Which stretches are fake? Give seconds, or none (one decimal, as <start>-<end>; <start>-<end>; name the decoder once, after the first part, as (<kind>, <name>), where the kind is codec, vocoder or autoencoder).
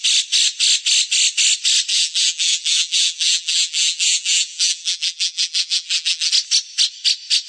1.9-6.3 (vocoder, BigVGAN v2)